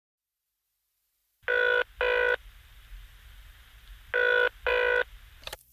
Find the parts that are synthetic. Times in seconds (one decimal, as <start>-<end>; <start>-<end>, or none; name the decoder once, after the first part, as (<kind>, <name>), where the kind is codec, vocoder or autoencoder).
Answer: none

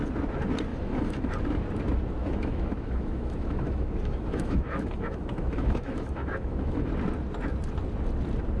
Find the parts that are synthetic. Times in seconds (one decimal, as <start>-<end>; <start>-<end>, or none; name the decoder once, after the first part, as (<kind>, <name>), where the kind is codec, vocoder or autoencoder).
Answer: 0.7-1.3 (autoencoder, DAC-VAE); 2.2-6.9

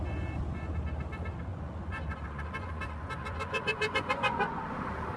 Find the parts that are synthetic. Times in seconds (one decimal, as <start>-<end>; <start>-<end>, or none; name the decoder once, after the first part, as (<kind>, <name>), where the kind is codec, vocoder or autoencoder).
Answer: 1.5-4.6 (vocoder, Vocos)

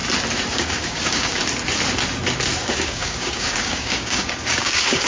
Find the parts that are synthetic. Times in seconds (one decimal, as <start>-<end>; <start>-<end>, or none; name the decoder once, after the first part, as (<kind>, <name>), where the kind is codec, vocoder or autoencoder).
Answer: 0.5-1.4 (codec, DAC); 2.6-5.1